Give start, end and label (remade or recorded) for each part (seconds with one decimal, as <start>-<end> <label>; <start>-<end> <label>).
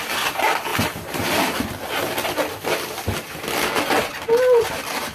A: 0.0-0.7 remade; 0.7-3.8 recorded; 3.8-5.1 remade